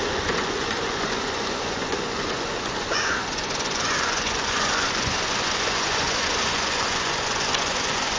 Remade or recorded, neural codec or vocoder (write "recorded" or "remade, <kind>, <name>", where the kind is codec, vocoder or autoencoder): remade, vocoder, Vocos